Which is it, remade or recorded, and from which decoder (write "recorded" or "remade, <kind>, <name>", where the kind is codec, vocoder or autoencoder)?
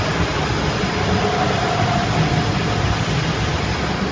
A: recorded